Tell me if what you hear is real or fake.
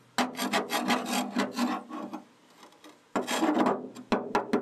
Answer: real